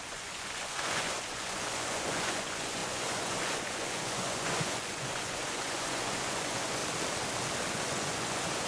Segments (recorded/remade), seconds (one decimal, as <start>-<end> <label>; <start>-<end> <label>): 0.0-6.8 remade; 6.8-7.7 recorded; 7.7-8.7 remade